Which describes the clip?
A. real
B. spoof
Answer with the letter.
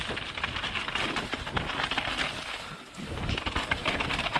A